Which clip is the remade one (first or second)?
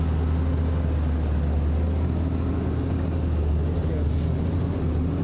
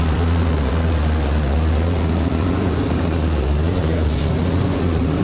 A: second